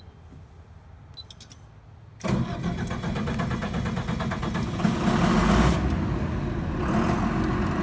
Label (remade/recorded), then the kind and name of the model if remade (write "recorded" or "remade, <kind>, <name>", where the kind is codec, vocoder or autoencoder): recorded